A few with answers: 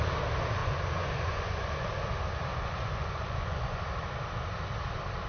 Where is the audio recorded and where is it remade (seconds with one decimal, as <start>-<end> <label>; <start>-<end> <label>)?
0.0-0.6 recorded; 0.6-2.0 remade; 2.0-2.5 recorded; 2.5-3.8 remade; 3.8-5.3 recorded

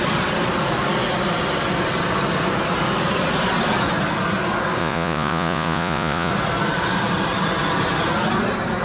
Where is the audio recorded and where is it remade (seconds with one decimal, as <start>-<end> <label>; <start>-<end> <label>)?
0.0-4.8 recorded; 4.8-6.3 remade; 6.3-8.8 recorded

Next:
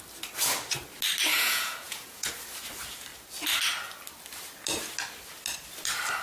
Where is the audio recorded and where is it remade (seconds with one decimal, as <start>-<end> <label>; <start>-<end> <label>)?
0.0-1.3 recorded; 1.3-2.3 remade; 2.3-6.2 recorded

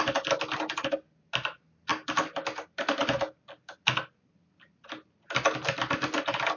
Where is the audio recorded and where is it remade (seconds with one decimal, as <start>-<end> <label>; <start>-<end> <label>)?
0.0-6.6 recorded

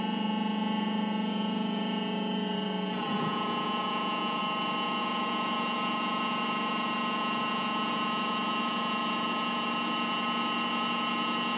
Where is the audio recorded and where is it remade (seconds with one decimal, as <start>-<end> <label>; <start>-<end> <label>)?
0.0-4.4 remade; 4.4-5.0 recorded; 5.0-11.6 remade